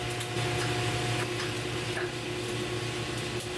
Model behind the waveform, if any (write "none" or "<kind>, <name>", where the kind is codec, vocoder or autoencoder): none